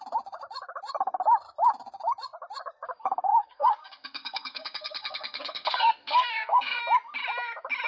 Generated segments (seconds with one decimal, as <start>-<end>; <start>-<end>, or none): 3.3-6.8